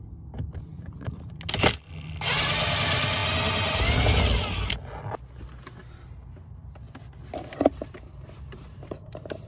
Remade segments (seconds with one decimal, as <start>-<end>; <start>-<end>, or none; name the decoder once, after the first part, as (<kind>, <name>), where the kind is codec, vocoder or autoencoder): 0.7-1.4 (vocoder, Vocos)